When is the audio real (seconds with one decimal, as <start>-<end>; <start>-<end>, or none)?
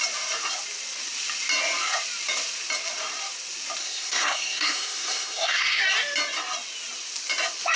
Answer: 0.0-3.8; 5.8-7.8